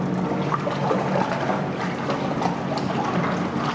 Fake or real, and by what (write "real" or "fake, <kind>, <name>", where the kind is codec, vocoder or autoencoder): real